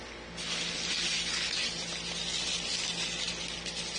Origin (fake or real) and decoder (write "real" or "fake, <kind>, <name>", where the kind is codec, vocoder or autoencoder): real